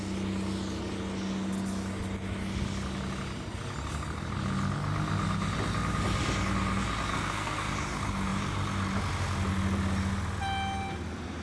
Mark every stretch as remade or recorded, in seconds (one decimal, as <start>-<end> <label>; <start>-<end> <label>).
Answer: 0.0-7.1 recorded; 7.1-7.7 remade; 7.7-11.4 recorded